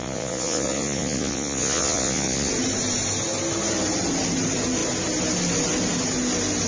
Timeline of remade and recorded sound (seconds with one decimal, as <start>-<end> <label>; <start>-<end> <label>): 0.0-2.5 remade; 2.5-6.7 recorded